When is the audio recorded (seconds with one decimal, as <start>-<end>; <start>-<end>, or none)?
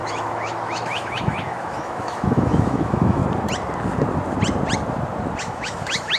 3.2-5.4